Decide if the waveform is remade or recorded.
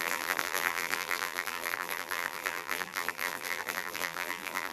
remade